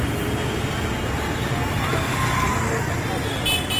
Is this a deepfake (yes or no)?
no